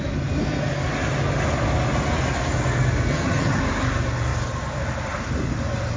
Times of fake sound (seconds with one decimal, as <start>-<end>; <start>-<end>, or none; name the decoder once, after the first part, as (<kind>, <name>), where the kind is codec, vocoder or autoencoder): 3.1-3.6 (vocoder, HiFi-GAN)